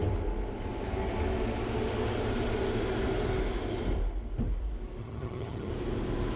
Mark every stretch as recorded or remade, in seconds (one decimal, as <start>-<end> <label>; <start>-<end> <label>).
0.0-5.0 recorded; 5.0-5.7 remade; 5.7-6.4 recorded